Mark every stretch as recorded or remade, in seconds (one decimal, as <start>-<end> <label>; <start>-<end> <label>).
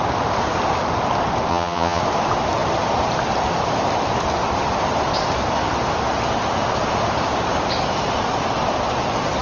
0.0-1.5 recorded; 1.5-2.0 remade; 2.0-9.4 recorded